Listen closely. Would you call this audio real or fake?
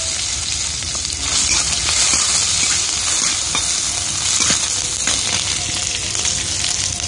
real